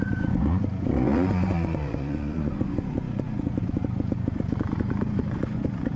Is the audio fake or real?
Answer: fake